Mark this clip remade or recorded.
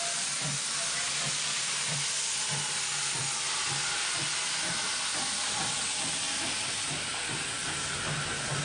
recorded